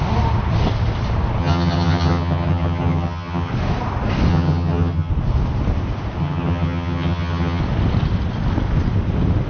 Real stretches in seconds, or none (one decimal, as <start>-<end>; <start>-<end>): 0.0-1.4; 3.5-4.3; 5.1-6.2; 7.6-9.5